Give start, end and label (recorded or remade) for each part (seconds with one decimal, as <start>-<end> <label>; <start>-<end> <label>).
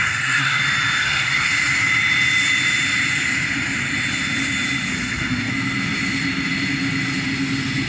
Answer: 0.0-0.6 remade; 0.6-1.0 recorded; 1.0-1.5 remade; 1.5-4.9 recorded; 4.9-5.5 remade; 5.5-7.9 recorded